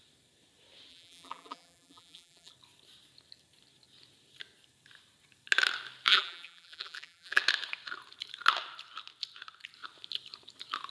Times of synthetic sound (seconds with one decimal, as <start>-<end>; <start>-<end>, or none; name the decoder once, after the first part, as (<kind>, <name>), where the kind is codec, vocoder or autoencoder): 0.9-2.5 (vocoder, BigVGAN v2); 6.1-7.4